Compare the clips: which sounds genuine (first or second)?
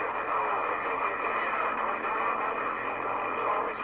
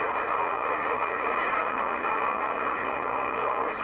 first